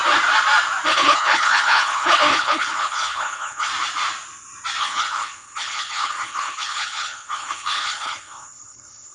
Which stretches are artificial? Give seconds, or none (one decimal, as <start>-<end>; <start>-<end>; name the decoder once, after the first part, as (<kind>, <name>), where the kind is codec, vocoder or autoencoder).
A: 0.9-3.7 (codec, HILCodec); 4.8-9.1

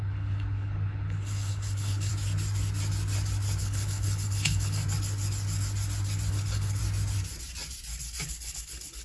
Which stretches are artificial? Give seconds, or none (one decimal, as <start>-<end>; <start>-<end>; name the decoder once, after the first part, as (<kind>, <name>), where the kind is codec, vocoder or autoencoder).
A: 0.0-2.1 (codec, HILCodec); 3.6-4.8; 6.3-6.8; 8.3-9.0

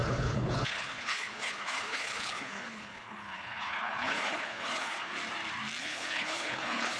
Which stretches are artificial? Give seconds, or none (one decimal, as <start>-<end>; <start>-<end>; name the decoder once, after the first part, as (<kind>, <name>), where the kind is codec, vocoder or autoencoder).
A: 0.0-5.1 (codec, HILCodec); 5.8-7.0

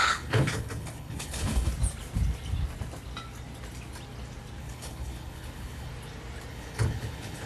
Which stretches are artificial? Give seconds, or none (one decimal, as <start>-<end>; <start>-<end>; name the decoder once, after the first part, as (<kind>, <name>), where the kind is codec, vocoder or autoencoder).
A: 0.0-1.7 (codec, HILCodec); 4.6-5.9; 6.5-7.5